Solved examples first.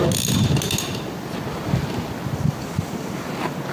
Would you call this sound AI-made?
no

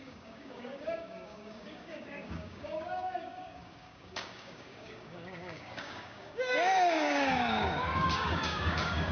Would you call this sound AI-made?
yes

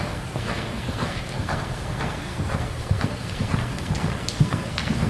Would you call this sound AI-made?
yes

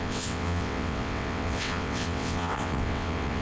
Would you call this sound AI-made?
yes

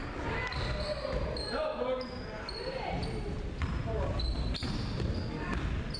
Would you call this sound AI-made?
no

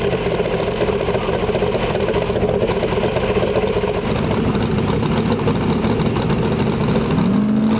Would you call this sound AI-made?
no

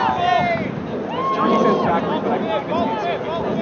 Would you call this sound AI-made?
no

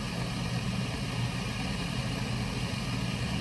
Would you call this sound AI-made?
no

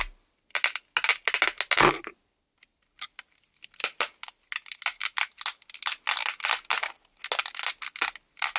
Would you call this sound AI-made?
no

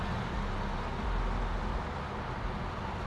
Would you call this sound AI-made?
no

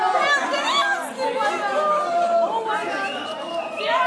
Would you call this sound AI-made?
no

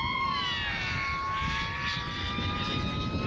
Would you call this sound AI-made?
no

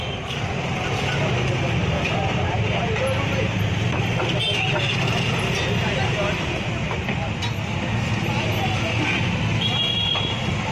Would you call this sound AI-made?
no